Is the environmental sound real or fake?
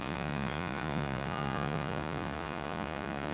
fake